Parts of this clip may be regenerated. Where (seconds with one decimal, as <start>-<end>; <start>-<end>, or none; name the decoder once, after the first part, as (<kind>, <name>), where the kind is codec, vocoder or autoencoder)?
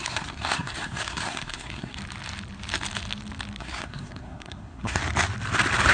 0.0-2.0 (codec, SNAC); 3.6-5.0